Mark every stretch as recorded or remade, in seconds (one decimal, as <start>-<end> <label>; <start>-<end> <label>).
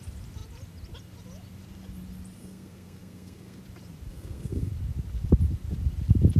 0.0-2.4 recorded; 2.4-3.6 remade; 3.6-4.1 recorded; 4.1-4.7 remade; 4.7-6.4 recorded